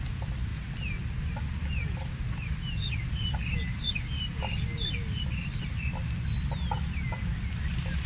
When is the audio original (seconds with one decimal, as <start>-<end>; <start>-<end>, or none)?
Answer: 0.0-8.1